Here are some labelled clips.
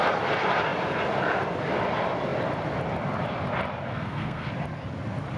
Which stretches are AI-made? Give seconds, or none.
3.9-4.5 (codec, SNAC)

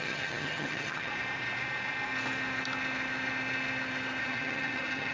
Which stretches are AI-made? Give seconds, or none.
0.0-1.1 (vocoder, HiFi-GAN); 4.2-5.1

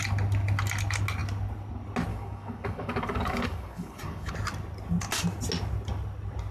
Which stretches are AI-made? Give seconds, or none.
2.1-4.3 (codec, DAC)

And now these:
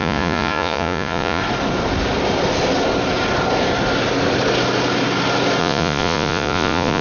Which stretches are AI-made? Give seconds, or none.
0.0-1.4 (vocoder, Vocos); 5.6-7.0

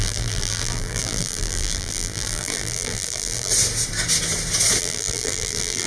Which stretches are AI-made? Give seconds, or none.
0.0-3.5 (vocoder, BigVGAN v2); 4.8-5.9